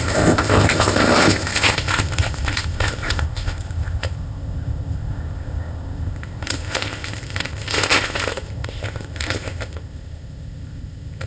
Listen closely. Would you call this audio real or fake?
fake